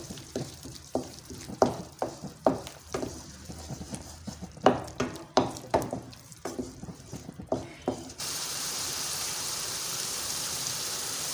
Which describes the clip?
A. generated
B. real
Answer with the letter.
A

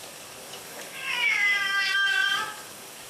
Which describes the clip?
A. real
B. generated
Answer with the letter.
B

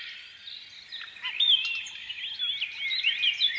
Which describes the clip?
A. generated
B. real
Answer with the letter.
B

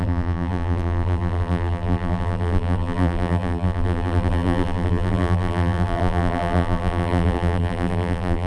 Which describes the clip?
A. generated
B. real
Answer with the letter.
A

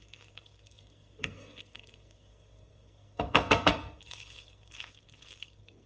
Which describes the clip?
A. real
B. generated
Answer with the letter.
B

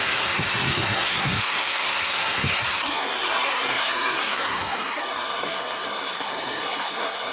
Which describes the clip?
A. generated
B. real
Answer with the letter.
A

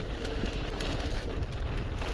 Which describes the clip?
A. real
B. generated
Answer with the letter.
A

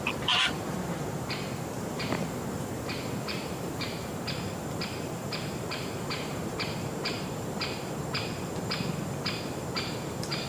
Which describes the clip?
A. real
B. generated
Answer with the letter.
B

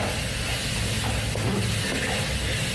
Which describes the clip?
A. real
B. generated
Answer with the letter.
A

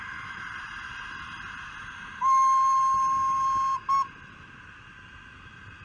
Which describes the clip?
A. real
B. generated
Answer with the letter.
A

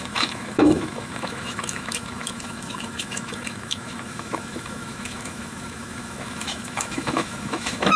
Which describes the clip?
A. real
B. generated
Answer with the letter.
B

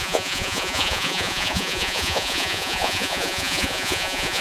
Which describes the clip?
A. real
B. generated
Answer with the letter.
B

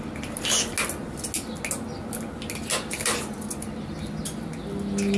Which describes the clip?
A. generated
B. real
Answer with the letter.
B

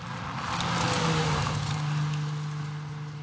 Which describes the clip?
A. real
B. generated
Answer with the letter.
A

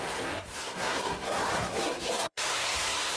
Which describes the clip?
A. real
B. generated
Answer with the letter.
B